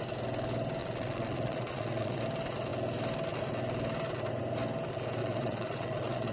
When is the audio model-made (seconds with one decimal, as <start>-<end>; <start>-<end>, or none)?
0.8-2.2; 5.2-6.3